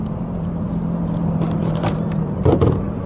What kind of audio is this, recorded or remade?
remade